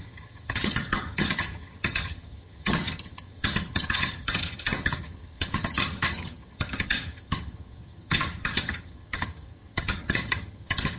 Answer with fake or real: fake